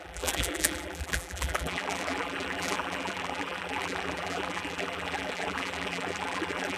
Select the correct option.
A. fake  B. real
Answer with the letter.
A